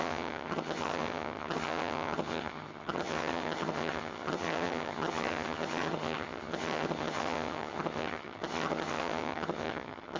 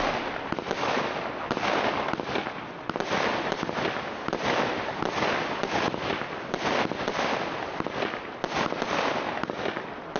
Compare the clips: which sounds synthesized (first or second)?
first